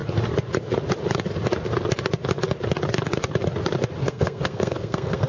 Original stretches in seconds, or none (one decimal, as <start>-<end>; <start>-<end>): 0.0-4.0